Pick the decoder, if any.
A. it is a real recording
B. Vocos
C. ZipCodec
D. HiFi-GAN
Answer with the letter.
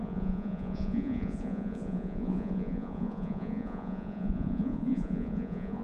B